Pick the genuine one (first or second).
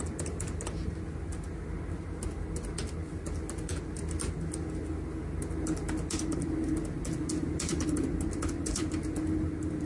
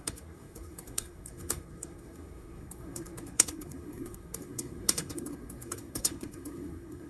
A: first